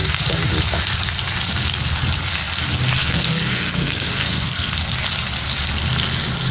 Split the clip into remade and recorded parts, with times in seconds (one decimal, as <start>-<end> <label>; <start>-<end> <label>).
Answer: 0.0-3.0 recorded; 3.0-4.7 remade; 4.7-6.5 recorded

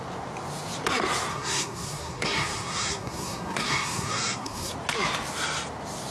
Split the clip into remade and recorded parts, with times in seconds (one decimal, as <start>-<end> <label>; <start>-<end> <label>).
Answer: 0.0-1.3 recorded; 1.3-4.7 remade; 4.7-6.1 recorded

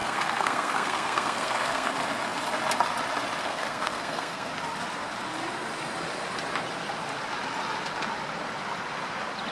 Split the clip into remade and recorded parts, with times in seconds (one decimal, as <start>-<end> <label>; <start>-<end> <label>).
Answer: 0.0-1.9 remade; 1.9-3.4 recorded; 3.4-4.5 remade; 4.5-9.5 recorded

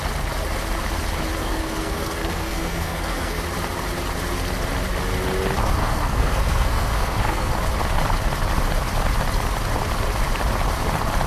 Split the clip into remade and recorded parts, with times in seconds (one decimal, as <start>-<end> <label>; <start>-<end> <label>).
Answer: 0.0-1.4 recorded; 1.4-3.4 remade; 3.4-5.8 recorded; 5.8-7.5 remade; 7.5-11.3 recorded

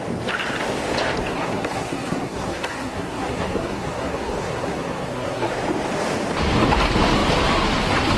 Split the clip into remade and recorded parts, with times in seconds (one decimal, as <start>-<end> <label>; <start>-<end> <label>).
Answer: 0.0-1.3 recorded; 1.3-5.5 remade; 5.5-8.2 recorded

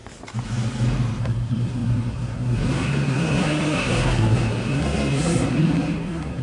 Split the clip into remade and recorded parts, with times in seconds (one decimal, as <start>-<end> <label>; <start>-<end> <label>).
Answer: 0.0-1.2 recorded; 1.2-6.4 remade

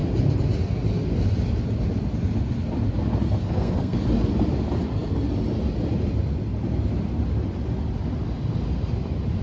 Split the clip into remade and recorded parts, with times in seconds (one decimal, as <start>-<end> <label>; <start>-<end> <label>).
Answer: 0.0-3.4 recorded; 3.4-4.0 remade; 4.0-9.4 recorded

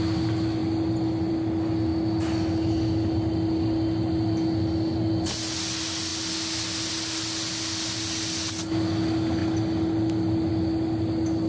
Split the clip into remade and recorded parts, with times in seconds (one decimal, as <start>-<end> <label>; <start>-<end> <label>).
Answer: 0.0-11.5 recorded